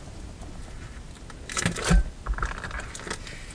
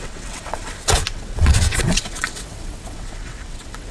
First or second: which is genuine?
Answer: first